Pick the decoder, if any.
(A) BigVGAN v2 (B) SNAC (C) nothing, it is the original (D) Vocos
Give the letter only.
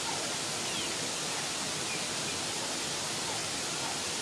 C